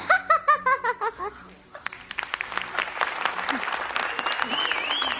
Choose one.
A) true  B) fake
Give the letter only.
A